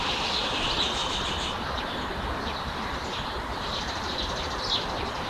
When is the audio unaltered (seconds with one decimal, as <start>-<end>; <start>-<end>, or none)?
none